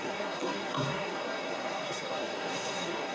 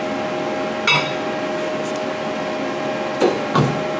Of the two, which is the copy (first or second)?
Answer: first